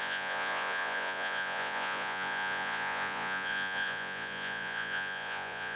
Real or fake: fake